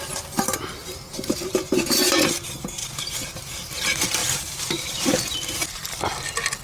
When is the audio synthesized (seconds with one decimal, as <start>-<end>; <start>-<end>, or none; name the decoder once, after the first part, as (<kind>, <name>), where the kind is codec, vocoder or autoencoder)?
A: 0.8-1.7 (vocoder, BigVGAN v2); 2.8-3.7; 4.2-6.0